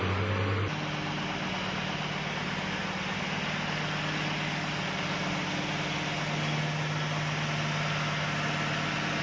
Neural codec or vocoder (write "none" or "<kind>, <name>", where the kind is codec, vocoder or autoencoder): none